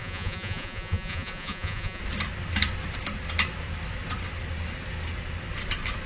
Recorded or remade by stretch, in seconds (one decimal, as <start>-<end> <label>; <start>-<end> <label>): 0.0-2.0 remade; 2.0-6.1 recorded

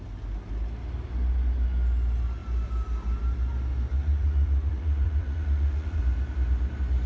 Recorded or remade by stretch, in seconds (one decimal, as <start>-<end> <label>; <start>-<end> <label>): 0.0-3.9 recorded; 3.9-6.0 remade; 6.0-7.1 recorded

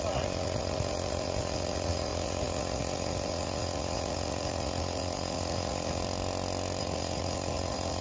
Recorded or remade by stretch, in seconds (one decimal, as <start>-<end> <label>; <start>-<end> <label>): 0.0-6.0 remade; 6.0-6.8 recorded; 6.8-8.0 remade

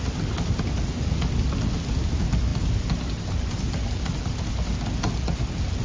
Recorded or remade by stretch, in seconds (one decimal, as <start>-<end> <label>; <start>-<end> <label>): 0.0-5.8 recorded

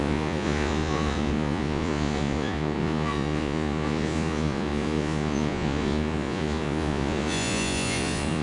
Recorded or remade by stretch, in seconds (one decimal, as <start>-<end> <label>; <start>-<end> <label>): 0.0-8.4 remade

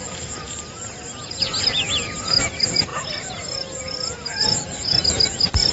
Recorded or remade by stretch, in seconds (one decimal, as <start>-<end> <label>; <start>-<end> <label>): 0.0-5.7 recorded